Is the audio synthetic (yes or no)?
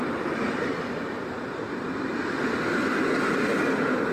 no